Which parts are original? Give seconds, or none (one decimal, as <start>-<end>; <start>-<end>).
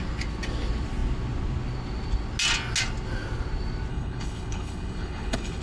0.0-3.9